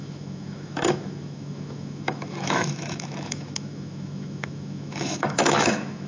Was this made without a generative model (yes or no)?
no